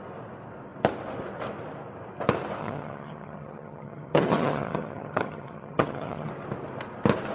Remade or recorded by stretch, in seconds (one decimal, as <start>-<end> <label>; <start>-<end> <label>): 0.0-2.6 recorded; 2.6-6.3 remade; 6.3-7.3 recorded